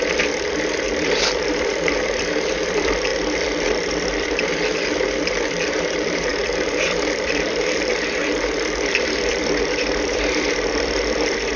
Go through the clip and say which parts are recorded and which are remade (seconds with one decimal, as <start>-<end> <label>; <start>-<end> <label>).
0.0-3.1 remade; 3.1-3.9 recorded; 3.9-11.6 remade